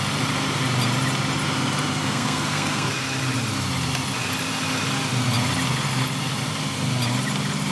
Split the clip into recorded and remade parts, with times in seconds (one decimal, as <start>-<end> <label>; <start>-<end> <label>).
0.0-2.0 recorded; 2.0-2.9 remade; 2.9-7.7 recorded